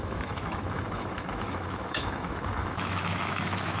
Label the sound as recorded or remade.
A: remade